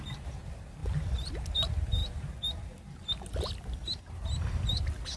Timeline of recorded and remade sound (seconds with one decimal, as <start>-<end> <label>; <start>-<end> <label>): 0.0-0.8 recorded; 0.8-1.3 remade; 1.3-5.2 recorded